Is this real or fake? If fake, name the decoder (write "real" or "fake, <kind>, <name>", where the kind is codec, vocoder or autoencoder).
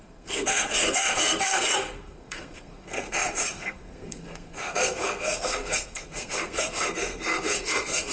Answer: fake, codec, SNAC